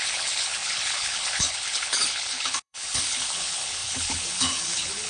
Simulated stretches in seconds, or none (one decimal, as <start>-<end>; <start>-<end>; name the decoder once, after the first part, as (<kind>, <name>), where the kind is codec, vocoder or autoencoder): 0.0-5.1 (codec, HILCodec)